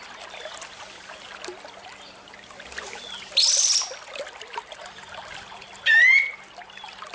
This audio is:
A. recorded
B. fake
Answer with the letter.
A